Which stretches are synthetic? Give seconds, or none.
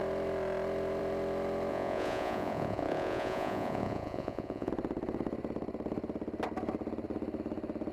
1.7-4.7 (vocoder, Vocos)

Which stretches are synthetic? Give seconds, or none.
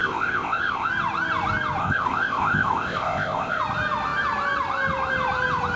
0.0-0.9 (codec, ZipCodec); 1.8-3.6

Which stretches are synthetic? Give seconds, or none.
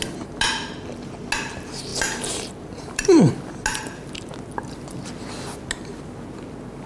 1.9-3.3 (vocoder, BigVGAN v2); 3.7-4.3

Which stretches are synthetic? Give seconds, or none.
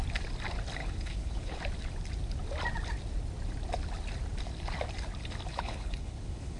0.8-1.6 (codec, HILCodec); 5.5-6.6